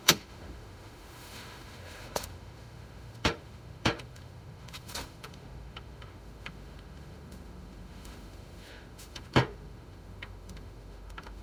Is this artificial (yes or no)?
yes